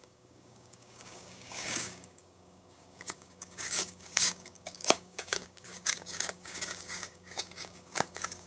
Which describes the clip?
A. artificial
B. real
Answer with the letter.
A